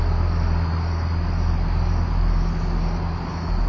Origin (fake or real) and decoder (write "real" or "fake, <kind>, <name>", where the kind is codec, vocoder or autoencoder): real